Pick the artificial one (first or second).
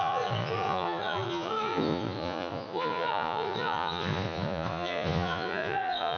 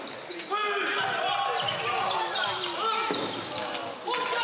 first